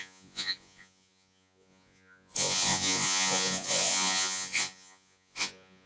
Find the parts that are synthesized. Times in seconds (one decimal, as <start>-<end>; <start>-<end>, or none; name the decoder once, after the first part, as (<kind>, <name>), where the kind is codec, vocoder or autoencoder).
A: 0.0-5.9 (vocoder, Vocos)